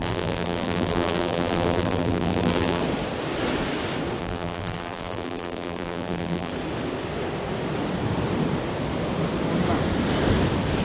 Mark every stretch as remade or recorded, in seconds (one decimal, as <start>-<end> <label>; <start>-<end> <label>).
0.0-2.8 remade; 2.8-4.2 recorded; 4.2-6.5 remade; 6.5-10.8 recorded